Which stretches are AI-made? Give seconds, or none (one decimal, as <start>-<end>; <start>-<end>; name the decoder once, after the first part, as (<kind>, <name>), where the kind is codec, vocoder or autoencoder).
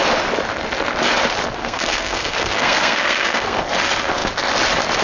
1.6-3.6 (codec, SNAC)